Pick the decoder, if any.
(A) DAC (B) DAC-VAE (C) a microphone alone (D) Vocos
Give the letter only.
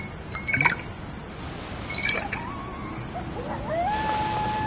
C